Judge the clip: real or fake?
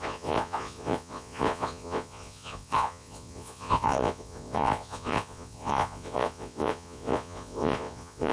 fake